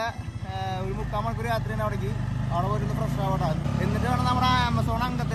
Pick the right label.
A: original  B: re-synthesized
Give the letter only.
A